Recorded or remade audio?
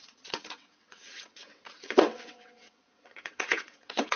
remade